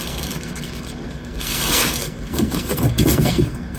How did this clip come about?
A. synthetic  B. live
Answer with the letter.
A